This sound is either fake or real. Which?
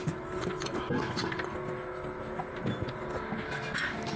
real